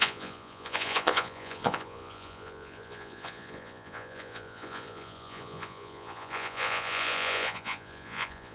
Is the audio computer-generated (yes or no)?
yes